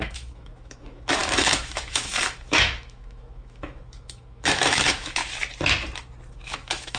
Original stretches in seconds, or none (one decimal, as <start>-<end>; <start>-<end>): 5.2-6.3